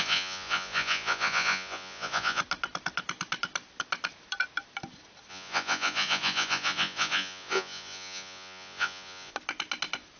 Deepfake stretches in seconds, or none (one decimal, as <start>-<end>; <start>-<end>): 0.0-2.4; 5.3-9.3